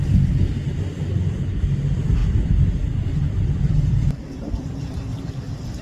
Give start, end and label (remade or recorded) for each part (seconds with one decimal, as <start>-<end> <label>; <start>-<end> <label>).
0.0-2.2 recorded; 2.2-5.3 remade; 5.3-5.8 recorded